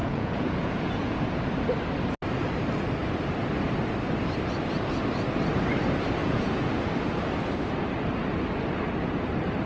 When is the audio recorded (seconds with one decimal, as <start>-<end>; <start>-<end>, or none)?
1.4-6.2; 6.8-9.7